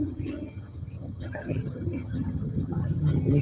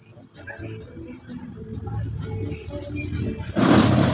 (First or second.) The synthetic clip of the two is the first